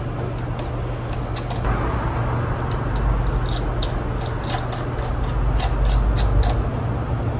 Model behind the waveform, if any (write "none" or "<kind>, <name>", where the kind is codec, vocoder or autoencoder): none